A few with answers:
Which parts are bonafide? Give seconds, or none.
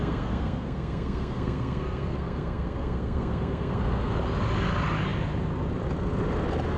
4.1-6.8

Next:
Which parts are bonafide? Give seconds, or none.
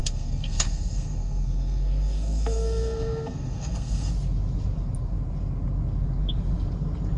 4.1-7.2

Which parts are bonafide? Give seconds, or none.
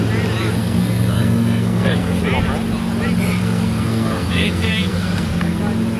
0.0-0.6; 2.2-3.4; 5.6-6.0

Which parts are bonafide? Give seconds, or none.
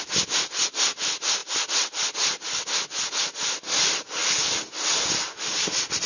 0.0-6.1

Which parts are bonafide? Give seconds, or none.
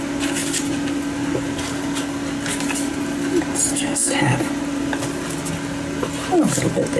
0.0-3.7; 4.2-7.0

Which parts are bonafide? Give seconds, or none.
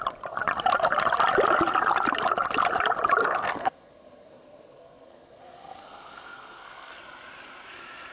0.0-3.2; 7.0-8.1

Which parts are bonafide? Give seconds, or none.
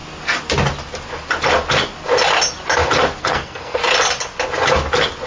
0.0-3.2; 3.8-5.3